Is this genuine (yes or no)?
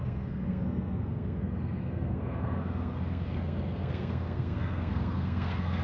no